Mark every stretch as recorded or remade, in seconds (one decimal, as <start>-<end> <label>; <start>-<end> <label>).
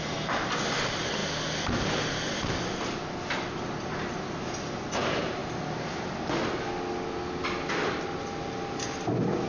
0.0-9.5 recorded